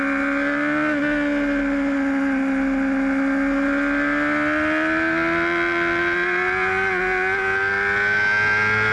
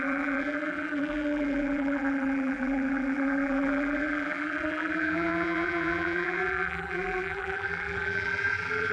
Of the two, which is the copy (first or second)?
second